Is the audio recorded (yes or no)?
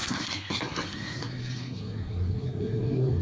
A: no